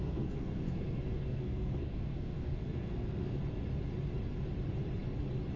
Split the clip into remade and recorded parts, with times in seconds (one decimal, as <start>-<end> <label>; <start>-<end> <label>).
0.0-3.4 remade; 3.4-5.6 recorded